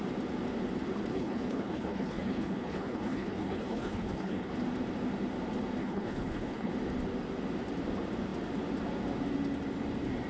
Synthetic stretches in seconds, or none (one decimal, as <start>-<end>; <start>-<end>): 1.1-4.5; 5.8-6.7